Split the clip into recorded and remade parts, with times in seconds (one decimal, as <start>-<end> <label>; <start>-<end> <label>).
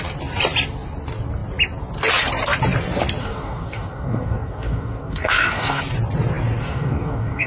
0.0-3.2 recorded; 3.2-5.8 remade; 5.8-6.6 recorded; 6.6-7.5 remade